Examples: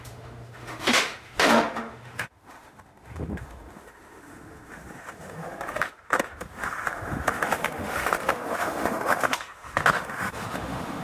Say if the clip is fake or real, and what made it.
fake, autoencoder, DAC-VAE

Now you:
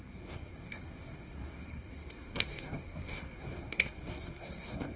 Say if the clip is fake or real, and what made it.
fake, codec, SNAC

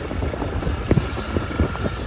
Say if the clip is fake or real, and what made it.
real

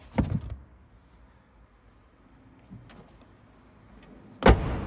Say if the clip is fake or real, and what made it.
real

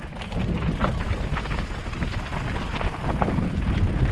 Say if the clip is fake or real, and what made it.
real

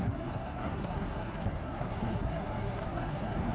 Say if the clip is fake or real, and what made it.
fake, codec, SNAC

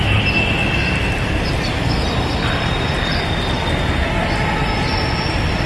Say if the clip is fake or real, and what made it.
real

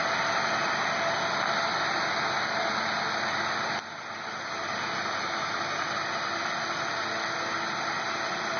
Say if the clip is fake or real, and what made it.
real